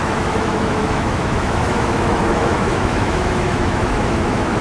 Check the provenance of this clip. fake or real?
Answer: fake